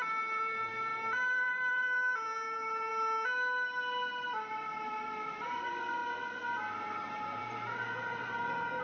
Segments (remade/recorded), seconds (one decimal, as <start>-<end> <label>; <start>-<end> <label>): 0.0-2.9 remade; 2.9-4.9 recorded; 4.9-6.0 remade; 6.0-6.8 recorded; 6.8-8.8 remade